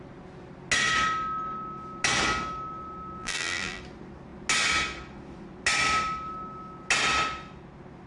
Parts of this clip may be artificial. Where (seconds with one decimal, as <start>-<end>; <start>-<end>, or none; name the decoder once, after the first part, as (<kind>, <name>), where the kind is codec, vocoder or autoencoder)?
3.2-3.8 (vocoder, BigVGAN v2)